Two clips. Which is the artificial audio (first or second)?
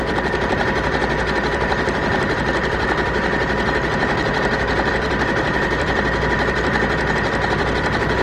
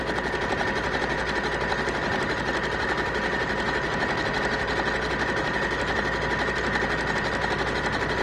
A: first